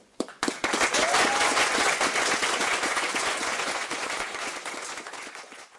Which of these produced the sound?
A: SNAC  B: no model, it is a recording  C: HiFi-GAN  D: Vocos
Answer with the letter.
D